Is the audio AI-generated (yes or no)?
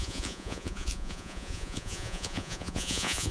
yes